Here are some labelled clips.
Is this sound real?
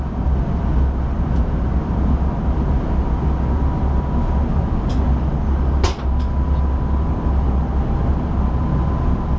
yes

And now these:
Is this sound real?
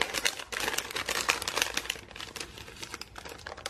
yes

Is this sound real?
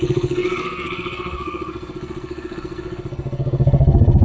no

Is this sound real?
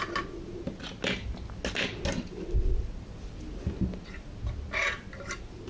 yes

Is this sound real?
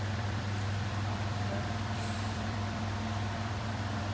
no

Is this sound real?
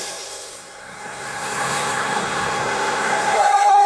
no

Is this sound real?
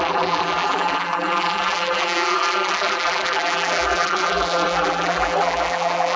no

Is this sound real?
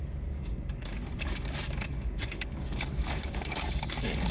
no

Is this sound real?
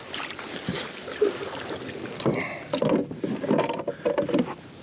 yes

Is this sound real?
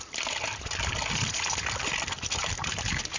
yes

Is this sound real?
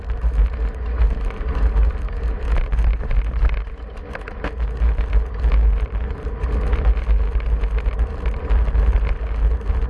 yes